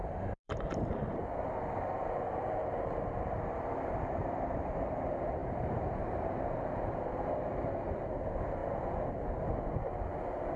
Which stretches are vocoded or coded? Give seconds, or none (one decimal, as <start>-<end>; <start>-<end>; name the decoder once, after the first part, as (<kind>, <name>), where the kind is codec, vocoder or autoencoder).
0.0-5.0 (vocoder, BigVGAN v2); 5.4-7.1